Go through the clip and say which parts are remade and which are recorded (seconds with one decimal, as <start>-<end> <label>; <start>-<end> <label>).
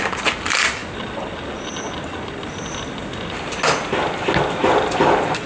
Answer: 0.0-5.5 recorded